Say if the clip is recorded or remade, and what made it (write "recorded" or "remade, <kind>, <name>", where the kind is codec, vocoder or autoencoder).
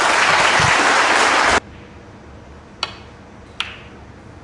recorded